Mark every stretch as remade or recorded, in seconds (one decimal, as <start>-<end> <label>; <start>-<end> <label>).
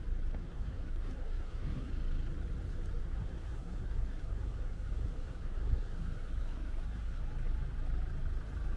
0.0-0.4 recorded; 0.4-1.9 remade; 1.9-3.0 recorded; 3.0-7.2 remade; 7.2-8.8 recorded